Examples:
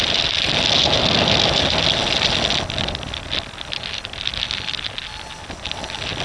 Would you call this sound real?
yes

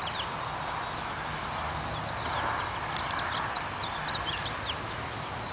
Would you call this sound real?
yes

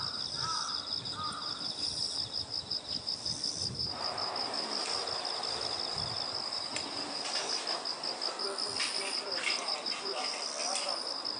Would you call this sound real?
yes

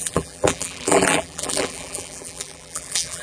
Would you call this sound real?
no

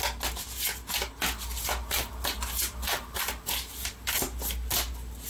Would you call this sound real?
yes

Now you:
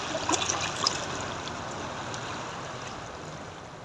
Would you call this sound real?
yes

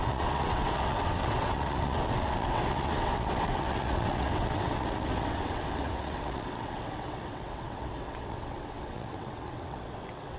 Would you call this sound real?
no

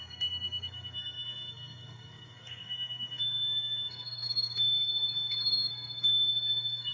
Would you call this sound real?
no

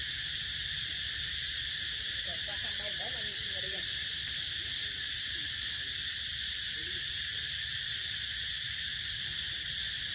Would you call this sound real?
no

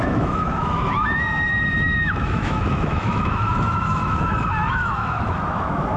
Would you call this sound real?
no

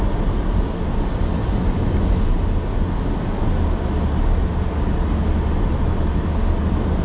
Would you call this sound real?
yes